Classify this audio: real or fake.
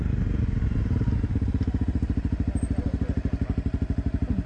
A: real